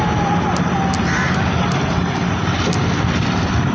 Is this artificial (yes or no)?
no